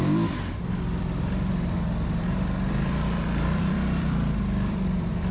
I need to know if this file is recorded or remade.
remade